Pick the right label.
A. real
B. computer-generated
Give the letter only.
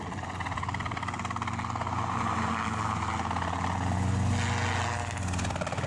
A